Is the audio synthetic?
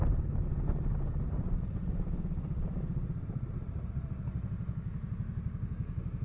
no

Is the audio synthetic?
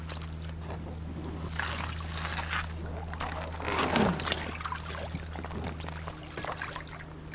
no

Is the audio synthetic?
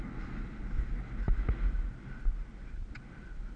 no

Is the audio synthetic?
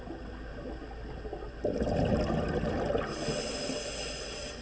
no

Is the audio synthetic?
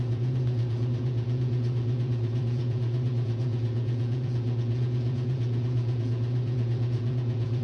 yes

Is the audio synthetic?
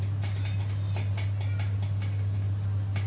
no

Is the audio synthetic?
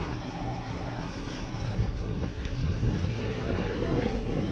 yes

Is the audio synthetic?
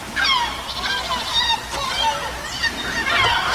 no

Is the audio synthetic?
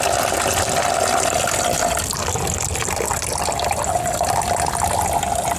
no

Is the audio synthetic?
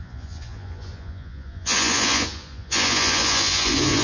yes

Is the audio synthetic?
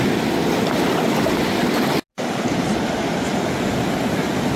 no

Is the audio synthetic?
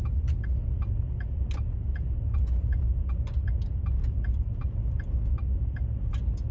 no